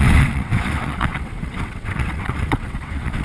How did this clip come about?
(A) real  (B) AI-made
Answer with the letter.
B